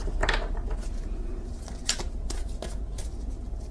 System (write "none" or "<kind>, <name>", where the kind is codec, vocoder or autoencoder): none